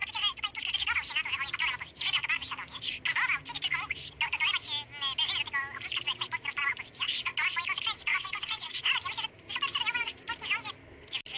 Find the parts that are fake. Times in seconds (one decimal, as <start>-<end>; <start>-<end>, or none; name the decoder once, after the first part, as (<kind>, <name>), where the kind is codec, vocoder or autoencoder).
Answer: 8.1-8.8 (vocoder, WaveNeXt)